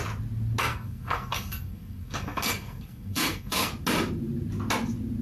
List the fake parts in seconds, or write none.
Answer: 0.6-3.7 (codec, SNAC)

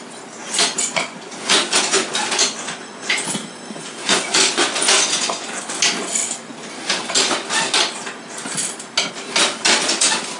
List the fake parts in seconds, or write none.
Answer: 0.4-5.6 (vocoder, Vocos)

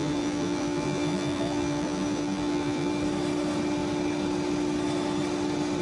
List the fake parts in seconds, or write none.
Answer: 0.0-2.9 (vocoder, BigVGAN v2)